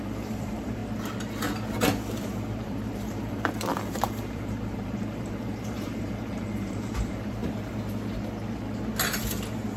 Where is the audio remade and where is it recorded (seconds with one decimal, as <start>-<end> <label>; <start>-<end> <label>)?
0.0-0.8 remade; 0.8-2.6 recorded; 2.6-7.4 remade; 7.4-9.8 recorded